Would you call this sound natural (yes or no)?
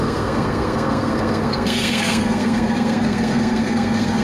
no